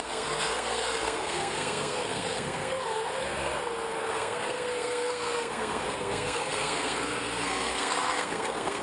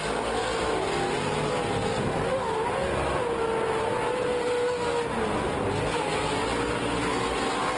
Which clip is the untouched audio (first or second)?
second